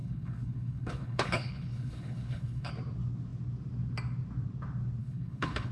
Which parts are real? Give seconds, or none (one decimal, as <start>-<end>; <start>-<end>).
2.7-5.0